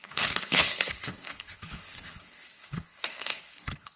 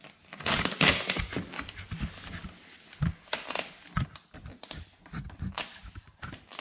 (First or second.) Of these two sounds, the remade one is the first